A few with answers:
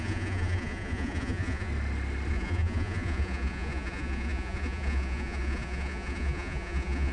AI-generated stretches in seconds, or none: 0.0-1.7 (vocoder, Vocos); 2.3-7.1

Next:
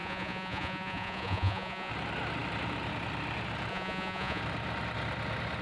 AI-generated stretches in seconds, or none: 0.0-1.9 (vocoder, Vocos); 3.7-4.4

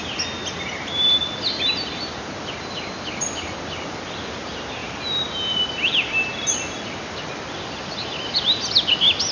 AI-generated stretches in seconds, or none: none

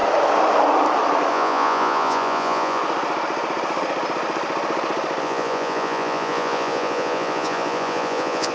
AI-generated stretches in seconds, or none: 1.3-2.8 (vocoder, Vocos); 5.2-8.5

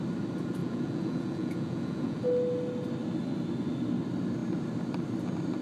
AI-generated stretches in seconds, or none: 0.6-2.2 (vocoder, Vocos)

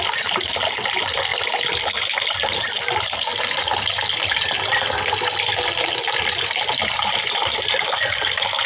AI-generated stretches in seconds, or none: none

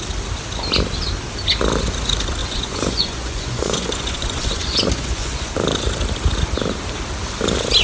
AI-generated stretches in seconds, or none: 2.4-5.5 (vocoder, Vocos)

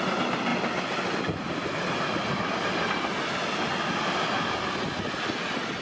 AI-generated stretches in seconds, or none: none